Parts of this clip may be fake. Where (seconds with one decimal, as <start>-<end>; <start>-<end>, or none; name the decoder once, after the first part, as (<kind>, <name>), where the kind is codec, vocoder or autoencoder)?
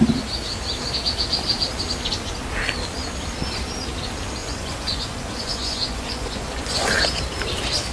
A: 4.4-7.2 (vocoder, Vocos)